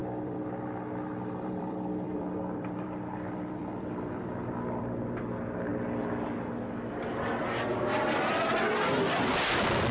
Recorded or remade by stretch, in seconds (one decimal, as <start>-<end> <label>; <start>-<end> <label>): 0.0-4.2 remade; 4.2-9.9 recorded